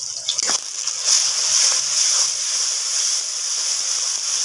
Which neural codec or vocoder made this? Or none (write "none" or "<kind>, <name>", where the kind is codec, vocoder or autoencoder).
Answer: none